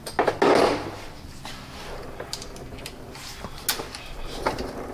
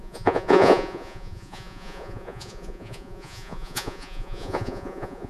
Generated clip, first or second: second